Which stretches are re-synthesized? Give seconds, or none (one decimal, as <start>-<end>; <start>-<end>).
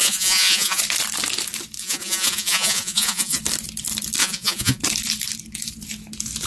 0.0-0.8; 1.8-3.4; 4.2-4.8